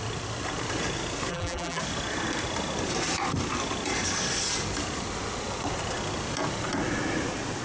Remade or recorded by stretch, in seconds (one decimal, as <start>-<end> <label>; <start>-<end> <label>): 0.0-1.3 recorded; 1.3-1.8 remade; 1.8-7.6 recorded